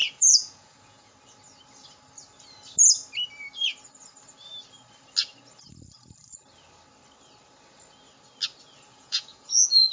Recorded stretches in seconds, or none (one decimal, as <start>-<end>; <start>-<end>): 1.1-8.9